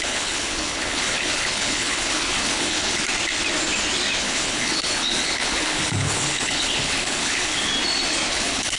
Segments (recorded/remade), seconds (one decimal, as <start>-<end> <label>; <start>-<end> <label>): 0.0-3.0 remade; 3.0-4.2 recorded; 4.2-7.7 remade; 7.7-8.3 recorded; 8.3-8.8 remade